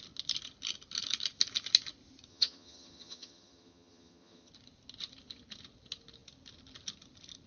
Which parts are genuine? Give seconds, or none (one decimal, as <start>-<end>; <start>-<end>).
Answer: 0.0-2.3; 4.5-7.5